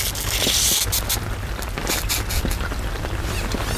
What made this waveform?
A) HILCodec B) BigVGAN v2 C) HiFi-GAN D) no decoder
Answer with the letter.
D